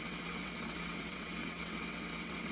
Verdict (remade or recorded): remade